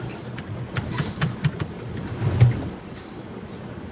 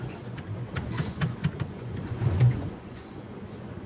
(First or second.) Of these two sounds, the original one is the first